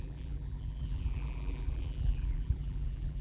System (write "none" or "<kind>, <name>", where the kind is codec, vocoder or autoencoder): vocoder, BigVGAN v2